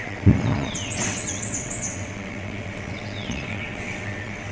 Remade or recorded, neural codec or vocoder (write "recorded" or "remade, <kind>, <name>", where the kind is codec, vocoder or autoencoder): remade, vocoder, WaveNeXt